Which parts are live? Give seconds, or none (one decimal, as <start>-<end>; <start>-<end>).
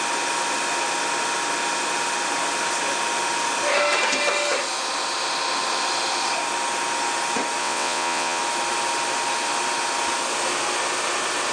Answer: 0.0-7.6; 8.4-11.5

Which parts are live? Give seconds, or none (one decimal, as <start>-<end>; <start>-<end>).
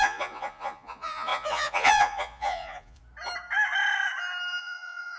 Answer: 3.0-4.6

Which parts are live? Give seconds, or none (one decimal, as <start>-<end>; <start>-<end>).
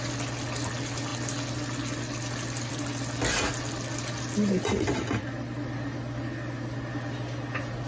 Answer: 0.0-7.9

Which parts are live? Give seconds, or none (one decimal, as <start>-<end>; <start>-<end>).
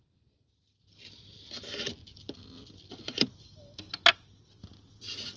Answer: 0.0-5.4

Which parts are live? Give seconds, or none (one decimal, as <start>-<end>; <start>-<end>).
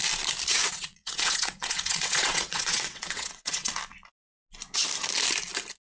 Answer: 0.0-0.5; 3.7-5.8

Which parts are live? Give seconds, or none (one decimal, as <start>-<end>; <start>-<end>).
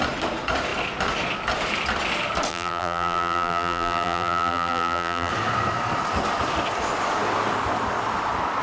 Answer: 0.0-2.5; 5.3-8.6